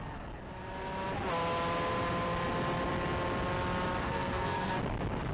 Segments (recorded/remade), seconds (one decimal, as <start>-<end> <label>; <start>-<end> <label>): 0.0-4.0 recorded; 4.0-4.7 remade; 4.7-5.3 recorded